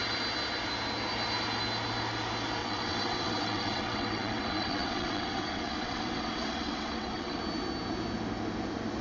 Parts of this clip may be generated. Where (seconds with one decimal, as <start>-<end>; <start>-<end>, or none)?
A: 2.6-7.4